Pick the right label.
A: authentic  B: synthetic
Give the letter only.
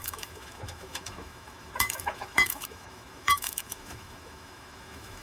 B